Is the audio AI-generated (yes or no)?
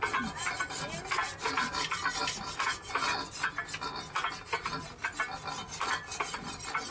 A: no